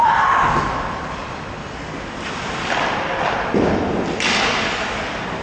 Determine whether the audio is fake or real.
real